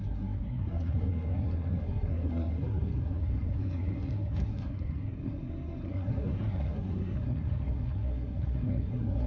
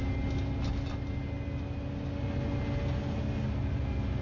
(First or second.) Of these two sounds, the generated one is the first